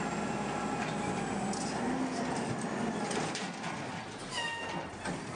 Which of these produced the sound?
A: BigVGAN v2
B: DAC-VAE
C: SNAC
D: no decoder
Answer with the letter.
D